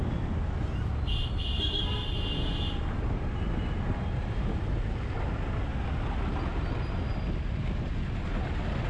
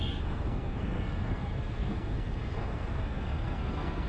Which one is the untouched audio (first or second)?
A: first